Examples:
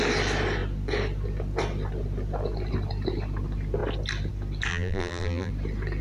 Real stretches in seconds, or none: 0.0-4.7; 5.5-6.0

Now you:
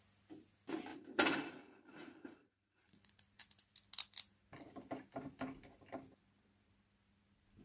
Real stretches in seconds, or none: 0.0-0.9; 3.4-7.6